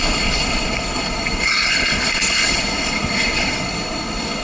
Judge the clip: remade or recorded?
remade